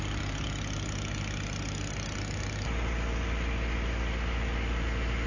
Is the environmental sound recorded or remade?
recorded